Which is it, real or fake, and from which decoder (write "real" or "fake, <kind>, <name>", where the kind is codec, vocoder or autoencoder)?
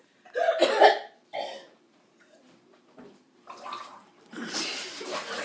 fake, vocoder, BigVGAN v2